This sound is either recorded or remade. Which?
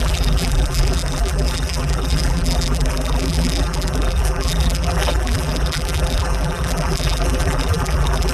remade